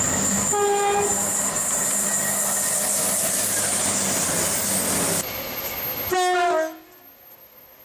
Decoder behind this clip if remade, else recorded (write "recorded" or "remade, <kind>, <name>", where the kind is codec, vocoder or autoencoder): recorded